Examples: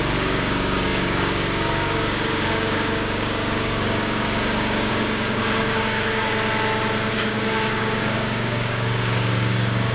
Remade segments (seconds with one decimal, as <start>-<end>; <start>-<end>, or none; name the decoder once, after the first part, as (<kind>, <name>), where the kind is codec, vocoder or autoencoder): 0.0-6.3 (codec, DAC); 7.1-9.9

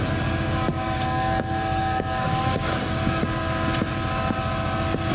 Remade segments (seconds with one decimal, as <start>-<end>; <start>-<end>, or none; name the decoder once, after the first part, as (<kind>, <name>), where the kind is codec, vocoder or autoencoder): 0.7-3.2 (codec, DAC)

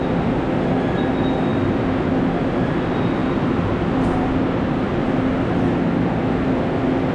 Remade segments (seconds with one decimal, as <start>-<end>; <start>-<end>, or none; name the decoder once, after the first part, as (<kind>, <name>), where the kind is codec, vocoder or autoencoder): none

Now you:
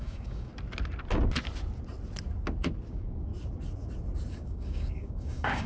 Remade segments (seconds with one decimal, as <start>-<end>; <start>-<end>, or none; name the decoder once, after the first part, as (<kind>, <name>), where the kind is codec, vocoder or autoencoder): 0.0-0.5 (codec, DAC); 2.9-3.3; 4.3-5.7